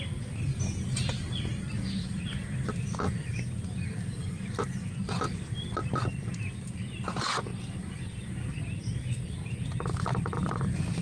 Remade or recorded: recorded